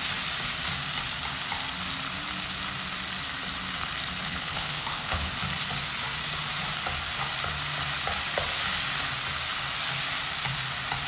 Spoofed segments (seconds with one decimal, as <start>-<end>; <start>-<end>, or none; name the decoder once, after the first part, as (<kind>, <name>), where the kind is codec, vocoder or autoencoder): 4.2-5.3 (codec, HILCodec)